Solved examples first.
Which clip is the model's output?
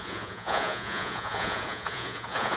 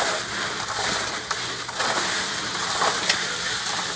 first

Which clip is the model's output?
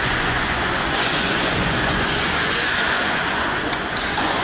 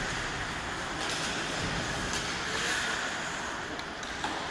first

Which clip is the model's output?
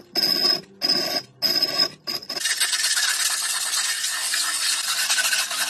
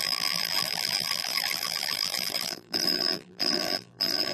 second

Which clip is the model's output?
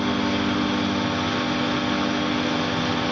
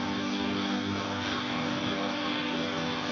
second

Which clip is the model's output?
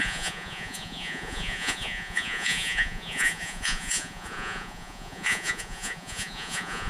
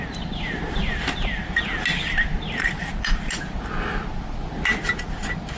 first